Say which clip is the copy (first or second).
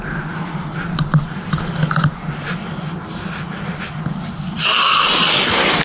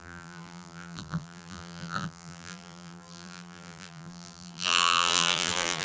second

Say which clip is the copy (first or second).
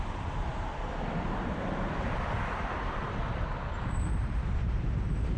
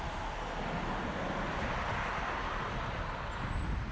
first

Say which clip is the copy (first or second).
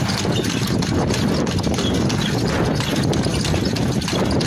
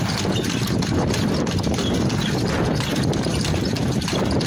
second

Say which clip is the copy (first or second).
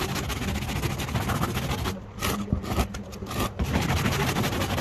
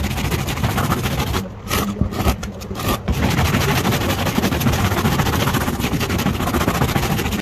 second